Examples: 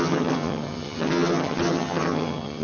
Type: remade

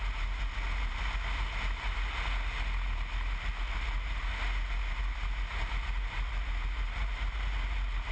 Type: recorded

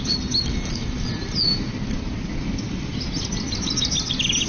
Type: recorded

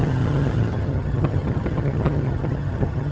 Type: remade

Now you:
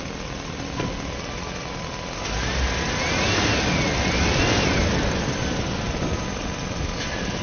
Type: recorded